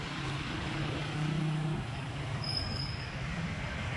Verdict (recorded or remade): remade